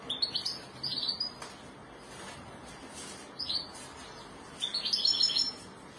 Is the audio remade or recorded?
recorded